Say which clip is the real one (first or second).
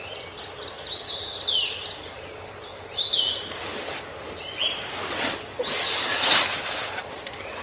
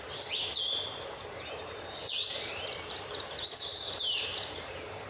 first